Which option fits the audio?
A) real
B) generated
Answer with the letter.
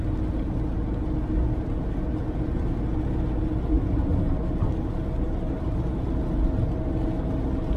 A